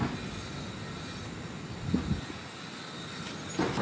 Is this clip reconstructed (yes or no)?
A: no